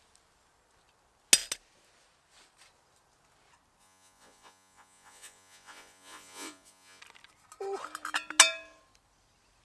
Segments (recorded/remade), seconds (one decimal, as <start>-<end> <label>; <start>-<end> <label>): 0.0-3.8 recorded; 3.8-7.0 remade; 7.0-9.6 recorded